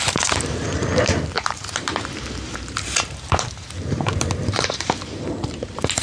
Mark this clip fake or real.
fake